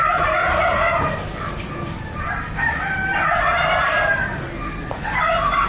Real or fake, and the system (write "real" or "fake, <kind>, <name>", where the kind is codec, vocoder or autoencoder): real